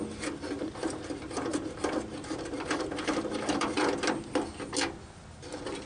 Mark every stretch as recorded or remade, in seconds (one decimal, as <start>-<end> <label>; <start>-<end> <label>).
0.0-1.5 recorded; 1.5-2.0 remade; 2.0-5.9 recorded